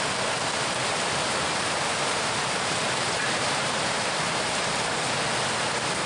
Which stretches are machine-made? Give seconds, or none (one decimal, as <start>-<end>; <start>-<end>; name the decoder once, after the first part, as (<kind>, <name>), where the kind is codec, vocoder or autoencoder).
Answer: 0.8-4.5 (vocoder, BigVGAN v2)